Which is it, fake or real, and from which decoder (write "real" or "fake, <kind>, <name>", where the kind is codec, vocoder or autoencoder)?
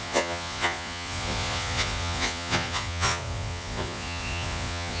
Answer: fake, vocoder, Vocos